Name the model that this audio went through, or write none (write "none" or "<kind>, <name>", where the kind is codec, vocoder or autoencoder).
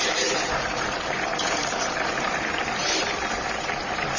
vocoder, BigVGAN v2